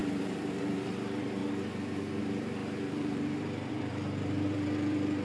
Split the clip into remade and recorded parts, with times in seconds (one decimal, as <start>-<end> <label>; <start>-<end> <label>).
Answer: 0.0-1.4 remade; 1.4-2.2 recorded; 2.2-5.2 remade